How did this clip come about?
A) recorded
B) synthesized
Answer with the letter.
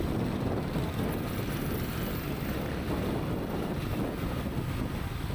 A